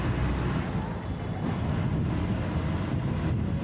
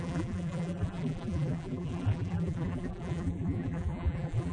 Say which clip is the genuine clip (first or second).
first